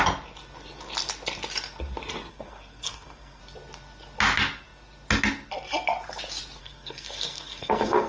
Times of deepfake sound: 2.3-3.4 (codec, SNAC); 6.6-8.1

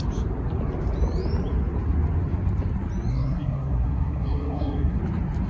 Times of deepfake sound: 3.1-5.0 (codec, SNAC)